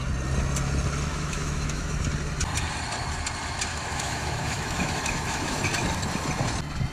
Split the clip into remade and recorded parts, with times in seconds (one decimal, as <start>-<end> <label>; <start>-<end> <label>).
0.0-1.1 recorded; 1.1-1.9 remade; 1.9-3.7 recorded; 3.7-5.6 remade; 5.6-6.9 recorded